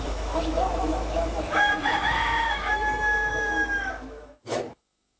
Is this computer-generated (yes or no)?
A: yes